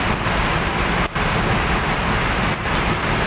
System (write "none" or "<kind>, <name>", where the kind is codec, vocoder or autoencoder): none